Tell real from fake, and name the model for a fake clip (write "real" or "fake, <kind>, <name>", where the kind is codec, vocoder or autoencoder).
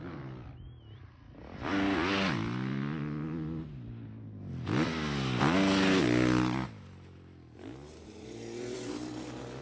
real